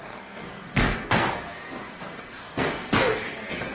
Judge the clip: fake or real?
fake